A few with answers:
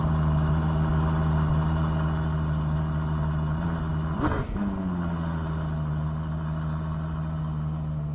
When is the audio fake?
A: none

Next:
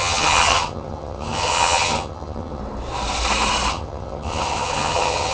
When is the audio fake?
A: 0.0-2.6 (vocoder, HiFi-GAN); 3.7-5.3

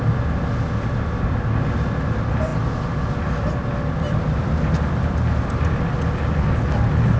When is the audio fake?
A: none

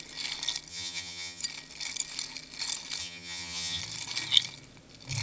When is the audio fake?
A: 0.7-1.4 (vocoder, HiFi-GAN); 3.0-3.8

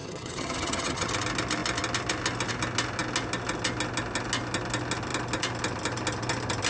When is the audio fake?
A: 0.0-1.1 (vocoder, HiFi-GAN)

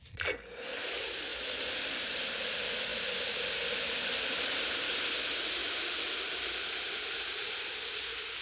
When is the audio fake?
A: none

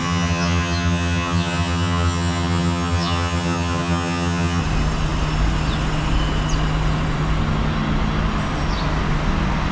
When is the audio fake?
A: 0.0-4.6 (vocoder, HiFi-GAN)